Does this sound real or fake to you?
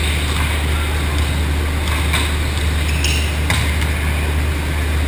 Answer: real